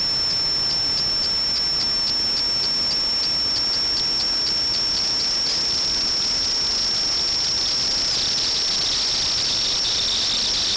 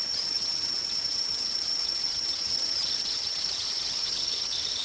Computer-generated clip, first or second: second